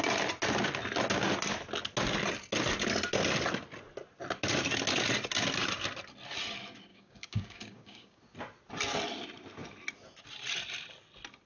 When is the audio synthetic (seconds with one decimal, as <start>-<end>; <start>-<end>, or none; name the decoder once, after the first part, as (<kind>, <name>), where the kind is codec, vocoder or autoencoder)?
6.9-8.2 (codec, DAC)